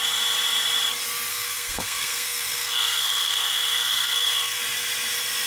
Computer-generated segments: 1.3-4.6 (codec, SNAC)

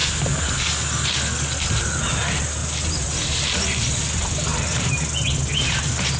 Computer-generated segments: 2.6-4.0 (vocoder, BigVGAN v2); 4.5-5.0